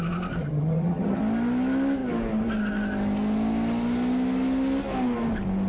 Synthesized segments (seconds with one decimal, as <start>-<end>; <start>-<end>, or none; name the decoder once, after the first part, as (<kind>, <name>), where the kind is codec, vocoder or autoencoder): 0.4-1.2 (vocoder, HiFi-GAN)